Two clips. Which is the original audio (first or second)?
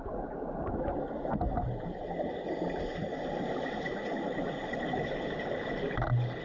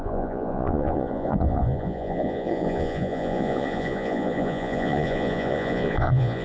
first